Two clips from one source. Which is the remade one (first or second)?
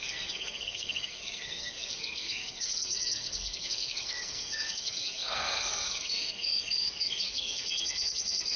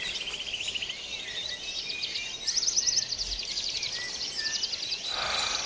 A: first